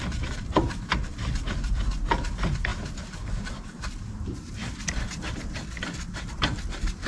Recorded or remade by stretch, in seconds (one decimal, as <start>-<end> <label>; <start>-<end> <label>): 0.0-7.1 remade